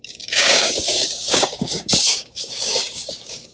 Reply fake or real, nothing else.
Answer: fake